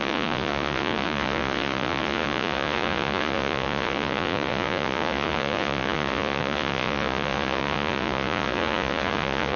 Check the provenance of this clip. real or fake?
fake